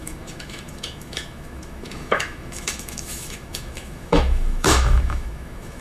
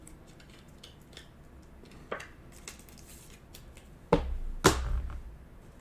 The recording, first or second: second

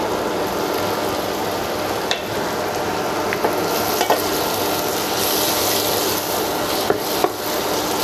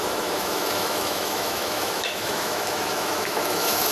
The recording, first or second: first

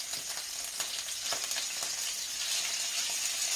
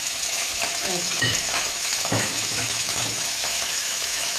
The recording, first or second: first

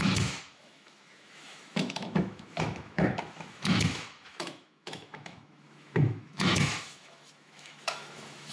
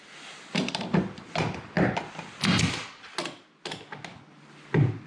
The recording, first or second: second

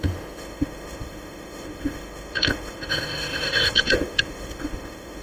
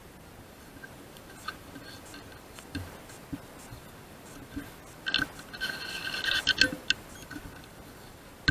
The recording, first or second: second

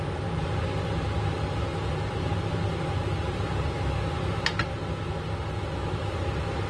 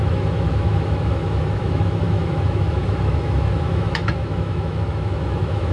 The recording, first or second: first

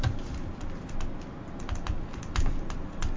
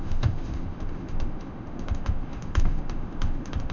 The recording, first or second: first